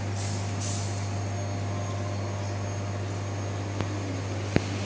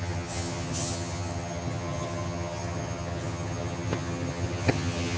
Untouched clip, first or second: first